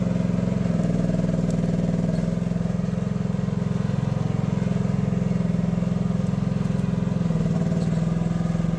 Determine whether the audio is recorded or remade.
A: recorded